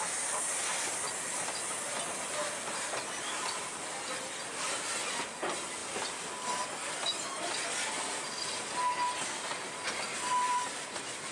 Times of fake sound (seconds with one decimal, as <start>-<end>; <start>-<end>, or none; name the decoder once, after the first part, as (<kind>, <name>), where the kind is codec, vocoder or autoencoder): none